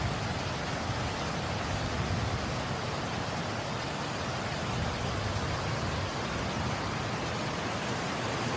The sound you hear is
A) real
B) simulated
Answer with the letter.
A